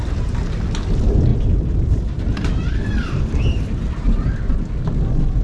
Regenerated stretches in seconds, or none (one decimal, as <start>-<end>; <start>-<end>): 1.3-4.5